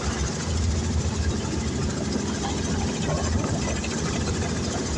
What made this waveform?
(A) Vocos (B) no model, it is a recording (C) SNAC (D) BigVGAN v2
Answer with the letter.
B